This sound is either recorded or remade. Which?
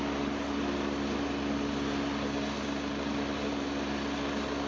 recorded